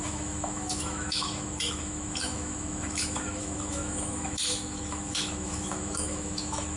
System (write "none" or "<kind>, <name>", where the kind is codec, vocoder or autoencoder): autoencoder, DAC-VAE